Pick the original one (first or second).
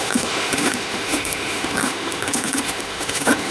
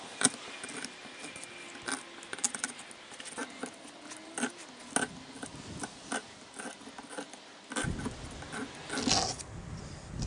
second